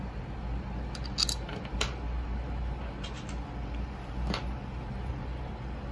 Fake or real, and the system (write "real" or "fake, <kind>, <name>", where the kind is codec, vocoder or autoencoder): real